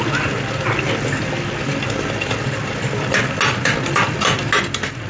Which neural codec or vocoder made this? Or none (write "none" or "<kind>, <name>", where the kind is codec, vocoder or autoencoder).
none